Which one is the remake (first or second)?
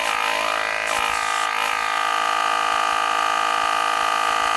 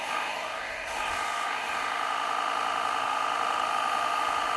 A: second